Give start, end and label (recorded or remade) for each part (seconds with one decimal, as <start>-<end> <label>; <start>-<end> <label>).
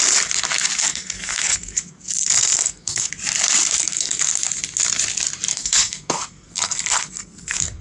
0.0-0.8 recorded; 0.8-3.1 remade; 3.1-3.8 recorded; 3.8-4.3 remade; 4.3-5.5 recorded; 5.5-7.8 remade